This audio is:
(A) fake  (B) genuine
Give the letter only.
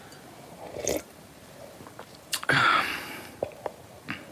A